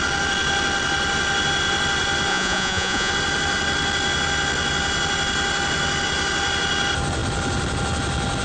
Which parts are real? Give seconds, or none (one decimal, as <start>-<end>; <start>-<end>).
0.0-2.3; 3.1-8.4